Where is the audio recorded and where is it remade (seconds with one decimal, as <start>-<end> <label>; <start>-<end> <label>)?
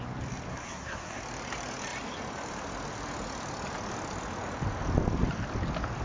0.0-0.5 recorded; 0.5-1.2 remade; 1.2-6.0 recorded